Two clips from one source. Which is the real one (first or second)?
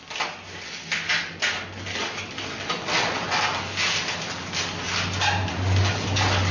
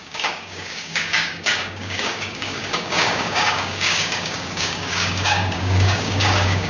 first